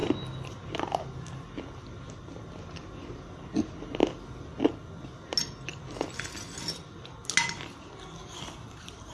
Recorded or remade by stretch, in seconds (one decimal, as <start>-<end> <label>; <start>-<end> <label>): 0.0-9.1 recorded